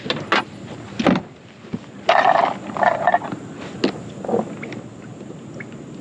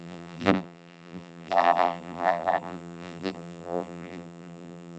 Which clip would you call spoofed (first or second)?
second